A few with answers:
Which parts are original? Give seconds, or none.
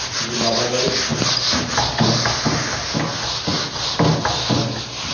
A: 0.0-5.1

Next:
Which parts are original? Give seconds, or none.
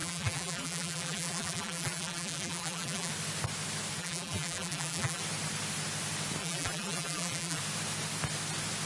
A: 3.1-4.0; 5.2-6.4; 7.6-8.9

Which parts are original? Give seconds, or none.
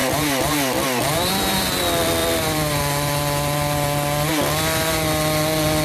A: 1.8-2.2; 2.8-5.8